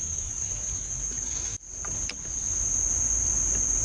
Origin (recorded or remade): recorded